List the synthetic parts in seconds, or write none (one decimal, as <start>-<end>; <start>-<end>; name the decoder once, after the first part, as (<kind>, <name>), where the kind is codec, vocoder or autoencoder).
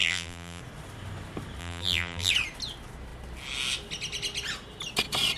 0.0-0.6 (vocoder, BigVGAN v2); 1.6-2.3